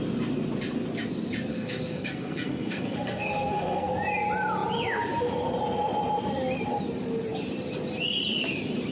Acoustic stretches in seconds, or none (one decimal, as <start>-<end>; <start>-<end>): 0.0-1.5; 3.9-8.9